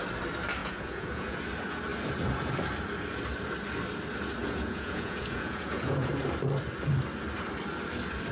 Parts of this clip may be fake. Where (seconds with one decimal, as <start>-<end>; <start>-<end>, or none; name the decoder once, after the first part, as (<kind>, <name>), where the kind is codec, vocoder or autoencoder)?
0.6-1.4 (vocoder, Vocos); 4.4-6.1